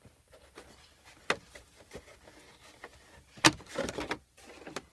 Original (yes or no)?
yes